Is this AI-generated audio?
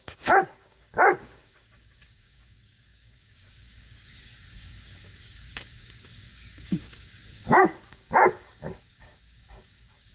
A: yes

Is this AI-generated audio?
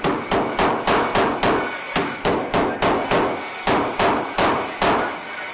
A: no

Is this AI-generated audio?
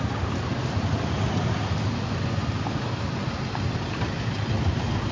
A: no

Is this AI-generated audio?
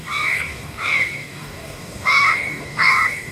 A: yes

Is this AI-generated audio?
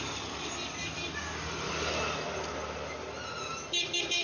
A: no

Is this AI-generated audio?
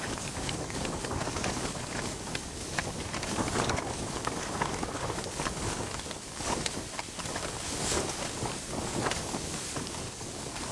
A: yes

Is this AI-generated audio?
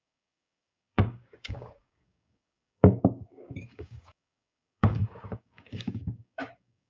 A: yes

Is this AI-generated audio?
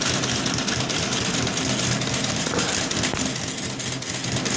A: no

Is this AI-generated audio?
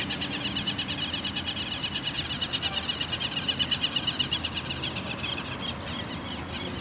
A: no